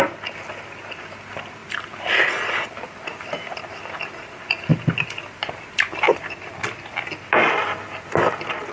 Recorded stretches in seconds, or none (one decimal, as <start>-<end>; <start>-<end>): 0.0-8.7